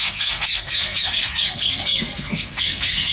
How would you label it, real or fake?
fake